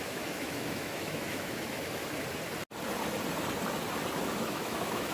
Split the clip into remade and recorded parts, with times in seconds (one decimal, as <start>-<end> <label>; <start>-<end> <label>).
0.0-2.0 remade; 2.0-4.2 recorded; 4.2-5.1 remade